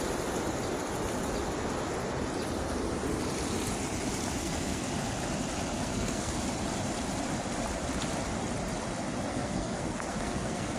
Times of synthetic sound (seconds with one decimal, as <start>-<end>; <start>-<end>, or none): 4.4-4.9; 5.8-6.4; 9.3-10.8